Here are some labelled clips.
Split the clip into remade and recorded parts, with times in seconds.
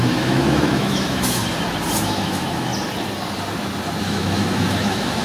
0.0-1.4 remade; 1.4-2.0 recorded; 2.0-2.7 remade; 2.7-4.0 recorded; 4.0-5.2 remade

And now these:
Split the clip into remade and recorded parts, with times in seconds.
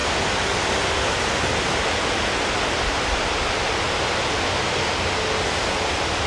0.0-6.3 recorded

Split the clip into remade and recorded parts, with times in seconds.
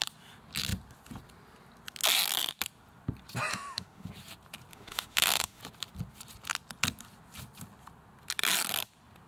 0.0-3.5 recorded; 3.5-4.1 remade; 4.1-4.7 recorded; 4.7-5.6 remade; 5.6-9.3 recorded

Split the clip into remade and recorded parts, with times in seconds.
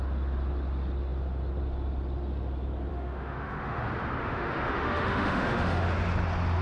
0.0-2.9 recorded; 2.9-3.8 remade; 3.8-4.2 recorded; 4.2-5.8 remade; 5.8-6.6 recorded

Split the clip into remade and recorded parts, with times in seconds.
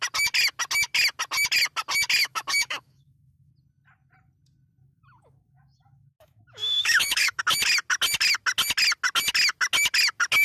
0.0-2.2 recorded; 2.2-3.5 remade; 3.5-4.8 recorded; 4.8-7.4 remade; 7.4-10.4 recorded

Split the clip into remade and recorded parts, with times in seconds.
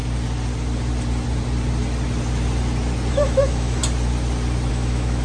0.0-3.1 recorded; 3.1-3.8 remade; 3.8-4.7 recorded; 4.7-5.2 remade